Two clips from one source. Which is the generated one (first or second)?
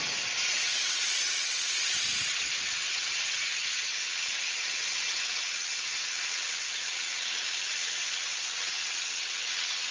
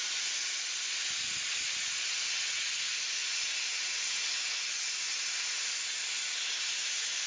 first